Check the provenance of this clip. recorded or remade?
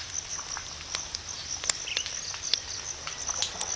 recorded